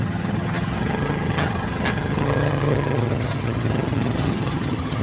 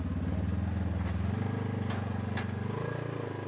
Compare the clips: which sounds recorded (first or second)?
second